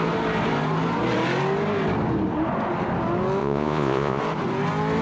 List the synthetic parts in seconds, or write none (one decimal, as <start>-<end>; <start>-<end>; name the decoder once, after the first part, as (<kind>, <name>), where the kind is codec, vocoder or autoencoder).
3.4-4.2 (vocoder, Vocos)

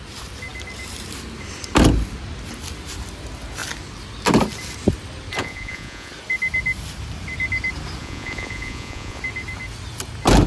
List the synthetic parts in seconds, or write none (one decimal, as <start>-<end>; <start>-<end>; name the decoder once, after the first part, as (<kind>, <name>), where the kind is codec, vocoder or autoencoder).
5.4-6.1 (vocoder, Vocos); 8.0-9.2

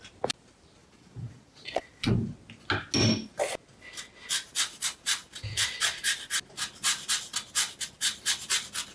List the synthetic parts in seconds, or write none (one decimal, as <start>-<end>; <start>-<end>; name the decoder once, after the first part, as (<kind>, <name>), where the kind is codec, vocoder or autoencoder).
0.8-2.1 (vocoder, Vocos)